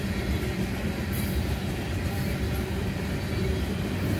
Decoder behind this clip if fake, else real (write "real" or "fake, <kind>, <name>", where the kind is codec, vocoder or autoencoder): real